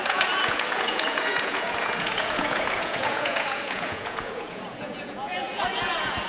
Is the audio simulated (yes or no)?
yes